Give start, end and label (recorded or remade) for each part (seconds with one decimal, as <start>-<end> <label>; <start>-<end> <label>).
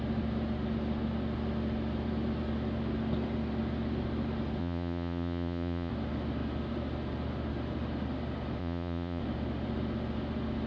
0.0-4.6 recorded; 4.6-5.9 remade; 5.9-8.6 recorded; 8.6-9.2 remade; 9.2-10.7 recorded